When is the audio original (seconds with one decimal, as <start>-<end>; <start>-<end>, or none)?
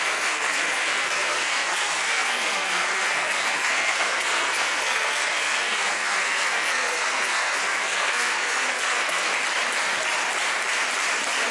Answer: 9.3-11.5